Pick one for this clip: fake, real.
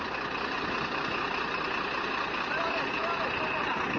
real